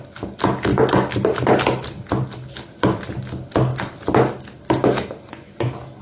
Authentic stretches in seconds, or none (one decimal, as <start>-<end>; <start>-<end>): 0.0-6.0